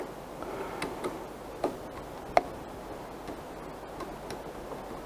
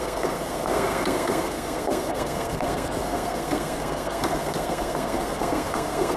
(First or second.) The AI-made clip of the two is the second